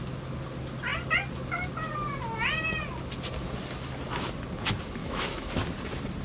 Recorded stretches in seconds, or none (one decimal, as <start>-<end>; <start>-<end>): 0.0-5.0; 5.5-6.2